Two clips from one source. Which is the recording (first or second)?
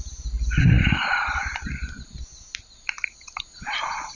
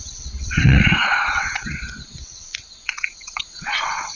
first